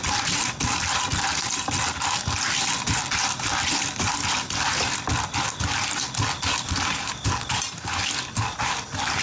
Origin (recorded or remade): recorded